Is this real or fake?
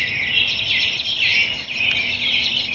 real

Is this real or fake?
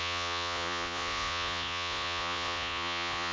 fake